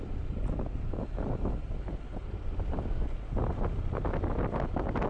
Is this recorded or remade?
recorded